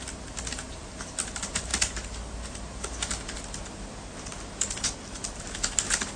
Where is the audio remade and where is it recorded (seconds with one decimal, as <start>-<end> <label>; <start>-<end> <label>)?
0.0-6.2 recorded

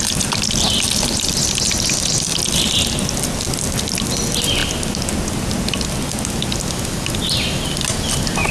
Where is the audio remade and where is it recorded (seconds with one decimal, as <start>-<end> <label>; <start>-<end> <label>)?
0.0-8.5 recorded

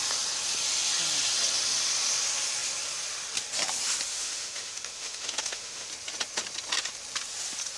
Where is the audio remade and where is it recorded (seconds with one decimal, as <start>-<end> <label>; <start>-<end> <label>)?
0.0-4.1 recorded; 4.1-5.9 remade; 5.9-7.8 recorded

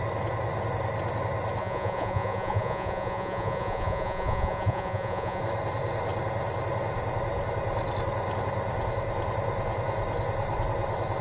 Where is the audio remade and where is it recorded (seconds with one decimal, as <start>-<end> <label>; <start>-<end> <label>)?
0.0-1.6 recorded; 1.6-5.4 remade; 5.4-11.2 recorded

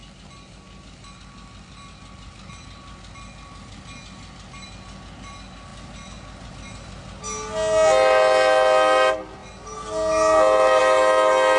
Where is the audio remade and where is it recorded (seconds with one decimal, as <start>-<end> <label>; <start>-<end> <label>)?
0.0-11.6 recorded